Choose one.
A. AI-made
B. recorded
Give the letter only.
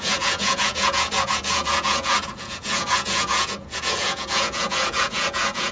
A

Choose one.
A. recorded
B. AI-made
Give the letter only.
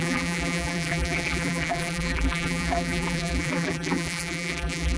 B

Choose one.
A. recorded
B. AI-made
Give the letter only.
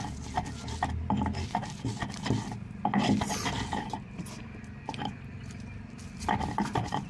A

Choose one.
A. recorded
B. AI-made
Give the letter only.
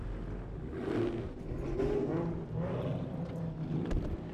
A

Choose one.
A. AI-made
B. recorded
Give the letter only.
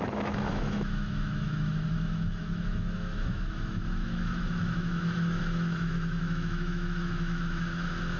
A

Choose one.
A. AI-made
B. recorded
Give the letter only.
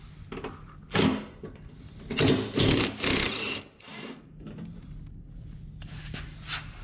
B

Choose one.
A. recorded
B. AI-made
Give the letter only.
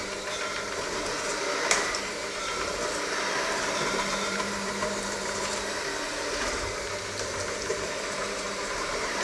B